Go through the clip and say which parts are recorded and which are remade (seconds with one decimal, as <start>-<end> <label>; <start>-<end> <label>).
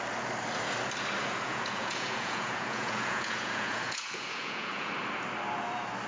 0.0-1.2 recorded; 1.2-4.9 remade; 4.9-6.1 recorded